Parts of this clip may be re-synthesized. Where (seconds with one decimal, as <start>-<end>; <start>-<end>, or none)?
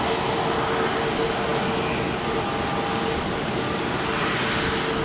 none